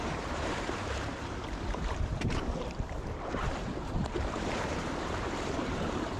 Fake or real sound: fake